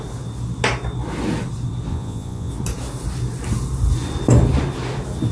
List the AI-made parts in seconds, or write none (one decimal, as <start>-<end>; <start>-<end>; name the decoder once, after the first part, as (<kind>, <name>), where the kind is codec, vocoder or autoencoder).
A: 1.9-2.5 (vocoder, Vocos)

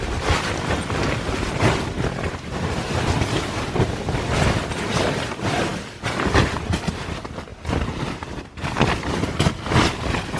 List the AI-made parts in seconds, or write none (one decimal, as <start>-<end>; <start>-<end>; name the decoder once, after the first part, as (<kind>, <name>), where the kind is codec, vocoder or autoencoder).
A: none

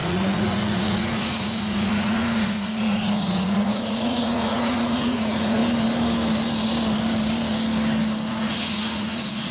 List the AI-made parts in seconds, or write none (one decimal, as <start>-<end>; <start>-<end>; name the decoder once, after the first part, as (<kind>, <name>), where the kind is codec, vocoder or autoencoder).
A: 0.0-5.6 (vocoder, Vocos); 8.3-9.5

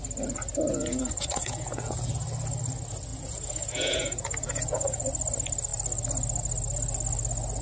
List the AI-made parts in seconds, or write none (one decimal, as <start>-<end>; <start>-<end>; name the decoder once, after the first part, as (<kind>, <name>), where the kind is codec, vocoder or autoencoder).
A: 0.7-2.1 (vocoder, Vocos); 3.1-5.1

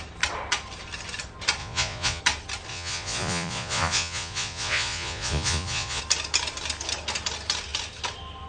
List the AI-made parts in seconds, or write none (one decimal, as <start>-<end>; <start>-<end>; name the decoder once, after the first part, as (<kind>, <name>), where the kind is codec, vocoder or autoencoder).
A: 1.6-2.2 (vocoder, Vocos); 2.7-6.0

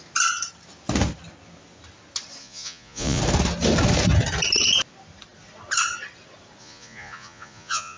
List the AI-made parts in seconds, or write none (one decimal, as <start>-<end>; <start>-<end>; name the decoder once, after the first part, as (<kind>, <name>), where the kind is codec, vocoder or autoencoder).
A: 2.4-3.2 (vocoder, Vocos); 6.6-8.0

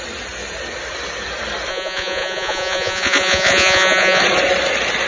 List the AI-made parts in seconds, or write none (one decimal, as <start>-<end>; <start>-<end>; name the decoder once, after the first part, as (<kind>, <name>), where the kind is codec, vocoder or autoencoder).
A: 1.7-4.2 (vocoder, Vocos)

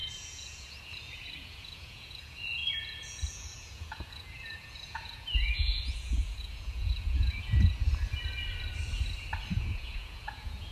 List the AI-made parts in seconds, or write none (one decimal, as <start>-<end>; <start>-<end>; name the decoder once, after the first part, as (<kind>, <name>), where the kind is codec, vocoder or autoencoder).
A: 0.0-7.9 (vocoder, Vocos); 9.5-10.7